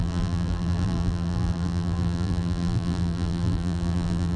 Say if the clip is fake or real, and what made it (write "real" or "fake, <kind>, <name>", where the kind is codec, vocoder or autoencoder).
fake, vocoder, BigVGAN v2